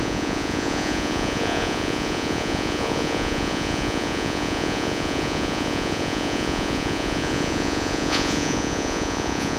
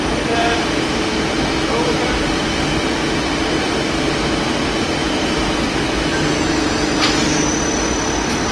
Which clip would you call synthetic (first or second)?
first